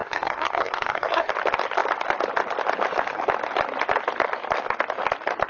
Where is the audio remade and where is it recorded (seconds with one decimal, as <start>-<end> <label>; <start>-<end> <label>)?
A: 0.0-1.3 remade; 1.3-5.5 recorded